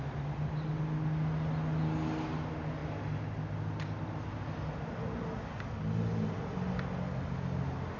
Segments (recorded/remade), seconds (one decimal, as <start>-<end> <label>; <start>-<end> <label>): 0.0-8.0 recorded